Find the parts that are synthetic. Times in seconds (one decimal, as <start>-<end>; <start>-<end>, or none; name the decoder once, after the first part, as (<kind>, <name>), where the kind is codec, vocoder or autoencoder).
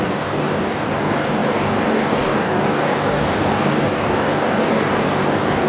0.0-5.7 (codec, DAC)